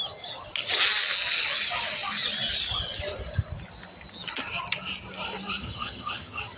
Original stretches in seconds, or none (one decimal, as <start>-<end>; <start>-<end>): 0.0-5.6